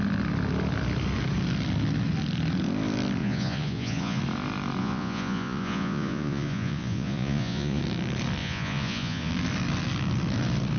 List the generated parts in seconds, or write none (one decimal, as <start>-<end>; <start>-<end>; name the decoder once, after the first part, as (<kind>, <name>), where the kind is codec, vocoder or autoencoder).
3.2-4.2 (vocoder, Vocos); 4.8-7.8; 8.4-9.3